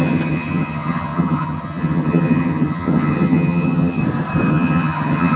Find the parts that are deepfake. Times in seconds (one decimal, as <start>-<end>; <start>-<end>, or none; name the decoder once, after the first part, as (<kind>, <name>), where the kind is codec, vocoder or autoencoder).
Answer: 0.0-4.0 (vocoder, HiFi-GAN); 4.5-5.4